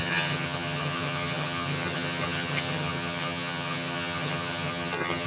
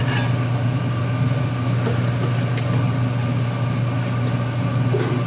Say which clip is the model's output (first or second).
first